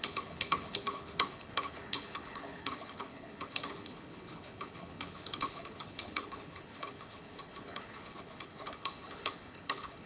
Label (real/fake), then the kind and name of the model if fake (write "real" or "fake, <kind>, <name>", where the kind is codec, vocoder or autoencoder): fake, codec, HILCodec